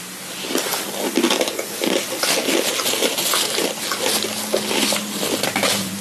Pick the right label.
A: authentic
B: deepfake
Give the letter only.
A